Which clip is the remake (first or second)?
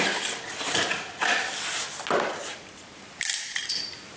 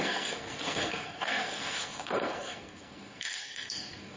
second